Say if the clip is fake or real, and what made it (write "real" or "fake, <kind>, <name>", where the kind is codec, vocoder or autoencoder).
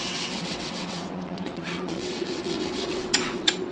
fake, vocoder, WaveNeXt